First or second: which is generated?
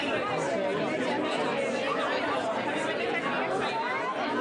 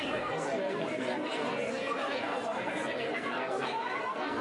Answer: second